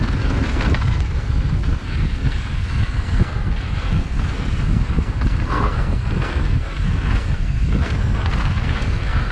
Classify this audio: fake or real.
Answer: fake